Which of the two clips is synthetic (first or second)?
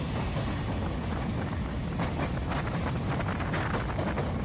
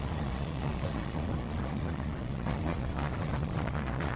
second